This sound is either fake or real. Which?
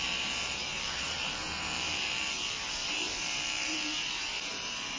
fake